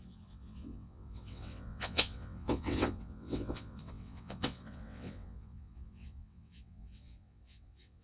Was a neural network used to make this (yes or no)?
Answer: yes